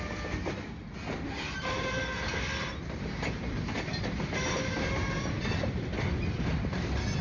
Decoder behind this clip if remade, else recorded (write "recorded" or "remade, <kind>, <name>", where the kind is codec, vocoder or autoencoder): recorded